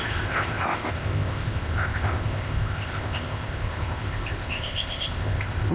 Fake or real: fake